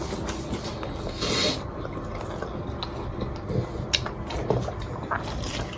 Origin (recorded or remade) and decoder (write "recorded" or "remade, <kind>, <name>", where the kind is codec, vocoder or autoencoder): recorded